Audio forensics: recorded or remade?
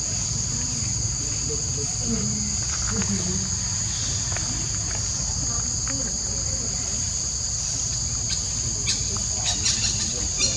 recorded